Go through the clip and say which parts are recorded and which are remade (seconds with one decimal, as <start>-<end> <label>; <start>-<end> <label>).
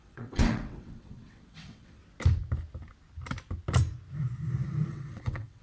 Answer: 0.0-2.0 remade; 2.0-4.9 recorded; 4.9-5.6 remade